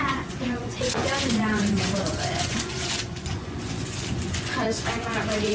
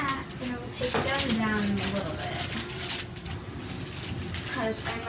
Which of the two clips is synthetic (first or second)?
first